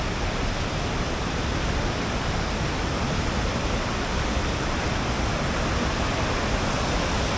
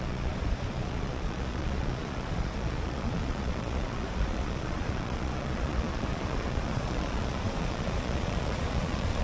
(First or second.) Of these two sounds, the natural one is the first